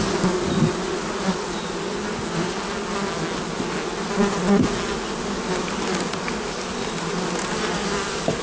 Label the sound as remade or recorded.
recorded